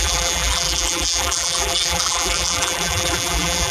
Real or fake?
fake